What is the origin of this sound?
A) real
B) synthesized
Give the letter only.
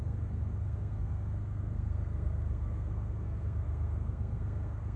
B